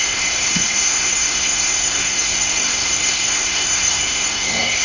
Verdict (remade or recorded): remade